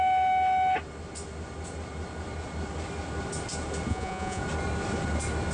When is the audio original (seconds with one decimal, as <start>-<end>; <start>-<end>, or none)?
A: 0.0-3.9; 4.4-5.5